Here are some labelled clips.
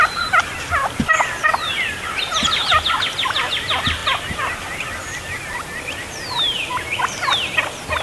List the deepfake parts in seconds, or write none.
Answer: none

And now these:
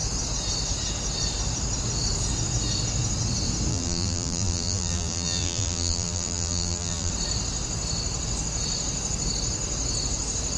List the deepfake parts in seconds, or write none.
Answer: 3.7-7.1 (vocoder, BigVGAN v2)

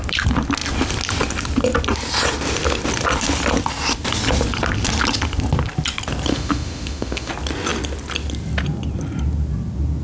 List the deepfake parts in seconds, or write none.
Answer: 6.3-7.3 (autoencoder, DAC-VAE)